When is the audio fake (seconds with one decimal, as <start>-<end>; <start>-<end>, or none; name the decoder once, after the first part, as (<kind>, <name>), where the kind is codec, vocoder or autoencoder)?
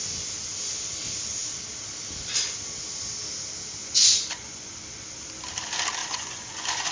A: 3.8-4.7 (vocoder, Vocos); 6.0-6.9